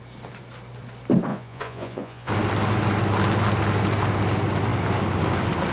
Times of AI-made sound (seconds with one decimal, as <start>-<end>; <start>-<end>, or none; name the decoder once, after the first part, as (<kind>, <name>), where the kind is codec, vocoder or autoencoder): 1.3-2.3 (vocoder, Vocos)

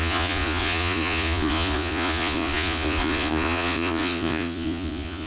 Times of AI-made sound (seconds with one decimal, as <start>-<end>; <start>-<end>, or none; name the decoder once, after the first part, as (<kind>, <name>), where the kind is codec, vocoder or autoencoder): 0.0-5.3 (vocoder, Vocos)

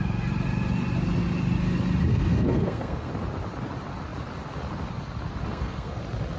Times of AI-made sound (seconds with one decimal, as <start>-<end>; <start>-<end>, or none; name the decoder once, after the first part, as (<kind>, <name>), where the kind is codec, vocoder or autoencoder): 2.1-3.1 (codec, SNAC); 5.5-6.0

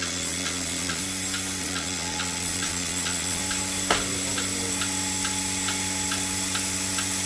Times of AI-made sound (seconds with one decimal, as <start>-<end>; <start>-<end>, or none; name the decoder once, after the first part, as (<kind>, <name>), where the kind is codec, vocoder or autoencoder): 0.0-1.0 (vocoder, Vocos); 1.6-3.4

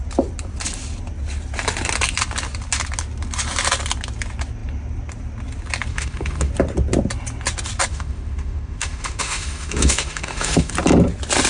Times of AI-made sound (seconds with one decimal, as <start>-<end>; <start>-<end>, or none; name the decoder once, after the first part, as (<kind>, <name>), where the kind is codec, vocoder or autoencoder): 5.9-6.5 (autoencoder, DAC-VAE); 7.9-10.7